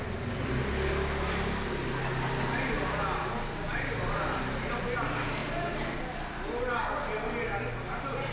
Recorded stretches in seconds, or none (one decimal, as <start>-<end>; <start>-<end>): 0.0-8.3

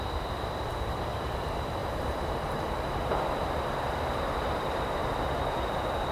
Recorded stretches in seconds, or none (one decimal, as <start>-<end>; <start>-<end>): 5.0-6.1

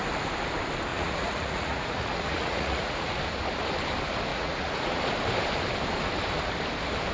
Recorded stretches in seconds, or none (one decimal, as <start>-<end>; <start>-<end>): 0.0-0.9; 3.2-4.3; 5.0-7.1

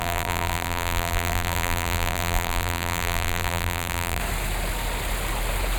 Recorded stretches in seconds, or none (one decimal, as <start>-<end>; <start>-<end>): 4.2-5.8

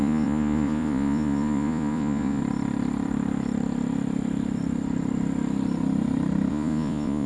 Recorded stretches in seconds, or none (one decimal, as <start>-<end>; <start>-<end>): 2.4-6.5

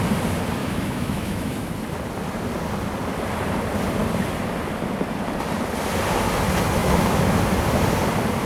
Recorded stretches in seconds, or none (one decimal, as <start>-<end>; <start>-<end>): 0.0-0.6; 1.7-6.8; 7.4-8.5

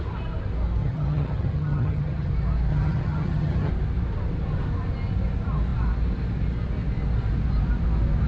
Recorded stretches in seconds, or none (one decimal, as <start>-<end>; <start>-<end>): 0.0-0.8; 2.3-2.7; 3.7-8.3

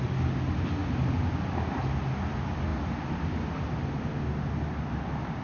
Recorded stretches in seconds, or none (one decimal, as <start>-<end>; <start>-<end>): 0.0-5.4